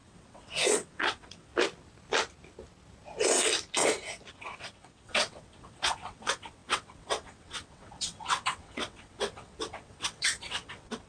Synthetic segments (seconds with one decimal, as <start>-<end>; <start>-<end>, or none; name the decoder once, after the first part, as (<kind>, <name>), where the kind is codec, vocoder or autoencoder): 0.0-1.5 (vocoder, WaveNeXt); 4.3-11.1